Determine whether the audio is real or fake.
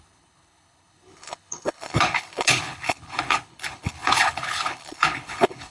fake